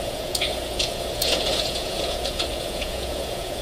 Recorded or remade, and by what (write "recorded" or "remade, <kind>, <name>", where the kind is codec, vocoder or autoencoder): remade, vocoder, Vocos